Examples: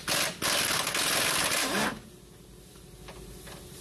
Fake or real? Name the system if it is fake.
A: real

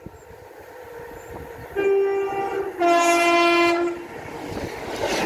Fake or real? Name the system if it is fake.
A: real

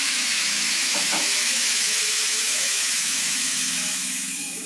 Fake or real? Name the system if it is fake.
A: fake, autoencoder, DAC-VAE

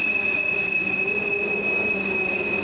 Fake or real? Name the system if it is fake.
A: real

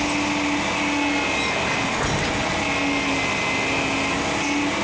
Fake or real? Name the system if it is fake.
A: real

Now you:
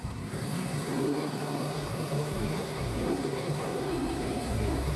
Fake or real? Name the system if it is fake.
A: fake, codec, SNAC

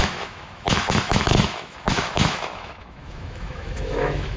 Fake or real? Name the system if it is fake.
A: fake, autoencoder, DAC-VAE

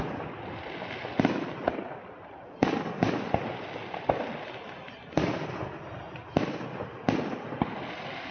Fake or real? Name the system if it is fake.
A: real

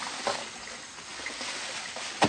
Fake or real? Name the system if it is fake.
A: real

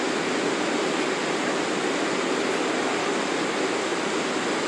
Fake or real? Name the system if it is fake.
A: real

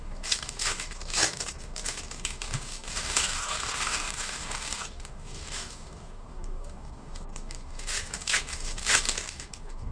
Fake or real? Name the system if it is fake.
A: fake, codec, DAC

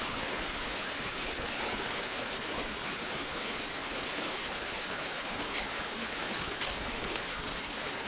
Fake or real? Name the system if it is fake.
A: fake, codec, HILCodec